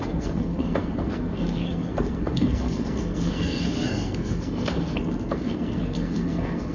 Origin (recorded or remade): remade